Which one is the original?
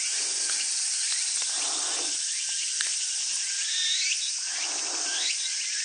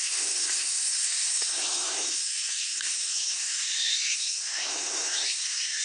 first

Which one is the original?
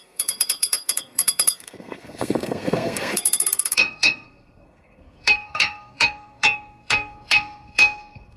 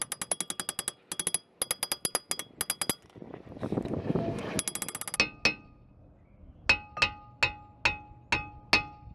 second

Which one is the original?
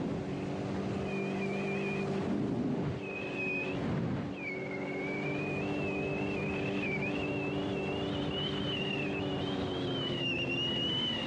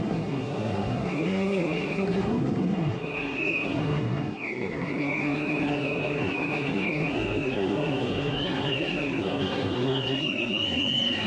first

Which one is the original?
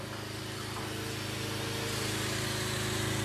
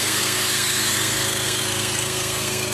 first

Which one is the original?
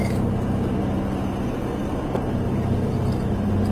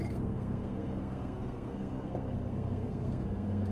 first